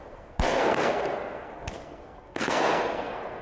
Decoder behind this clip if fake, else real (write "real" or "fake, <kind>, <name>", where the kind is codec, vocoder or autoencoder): fake, codec, SNAC